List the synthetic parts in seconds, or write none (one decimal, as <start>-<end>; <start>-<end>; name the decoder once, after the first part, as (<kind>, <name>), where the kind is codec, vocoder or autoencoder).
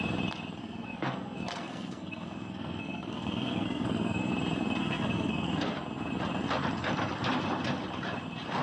0.6-4.3 (codec, SNAC); 4.8-5.7